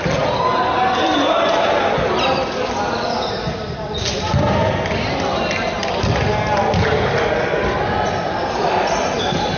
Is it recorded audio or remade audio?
recorded